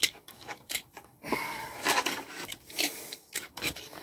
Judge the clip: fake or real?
fake